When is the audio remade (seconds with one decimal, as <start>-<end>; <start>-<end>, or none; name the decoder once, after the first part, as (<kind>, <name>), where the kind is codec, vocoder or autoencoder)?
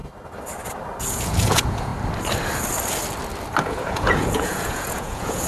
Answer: 1.0-1.9 (vocoder, Vocos); 3.6-5.5